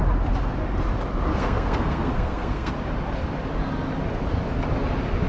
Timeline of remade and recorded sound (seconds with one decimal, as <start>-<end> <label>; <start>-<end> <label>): 0.0-1.3 recorded; 1.3-2.7 remade; 2.7-5.3 recorded